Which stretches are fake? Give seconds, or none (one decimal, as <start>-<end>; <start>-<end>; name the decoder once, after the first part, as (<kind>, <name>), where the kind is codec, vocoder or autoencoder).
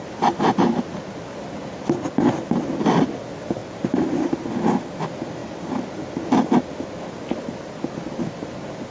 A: 3.6-4.4 (vocoder, BigVGAN v2)